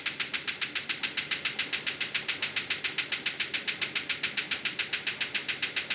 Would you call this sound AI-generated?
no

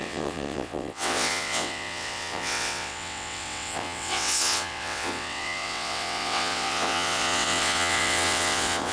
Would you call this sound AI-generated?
yes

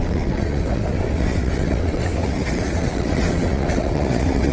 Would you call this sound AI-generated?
yes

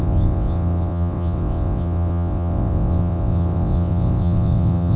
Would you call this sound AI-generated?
yes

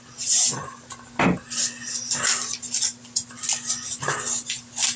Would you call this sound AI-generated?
no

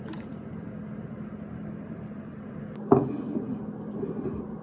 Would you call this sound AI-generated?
no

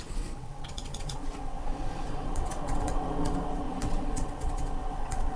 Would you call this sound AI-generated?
yes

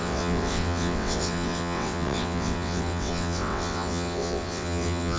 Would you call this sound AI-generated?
yes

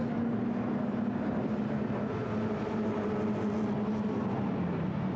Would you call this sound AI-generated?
no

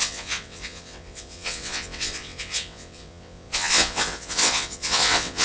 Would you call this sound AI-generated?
yes